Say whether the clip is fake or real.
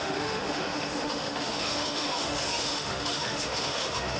fake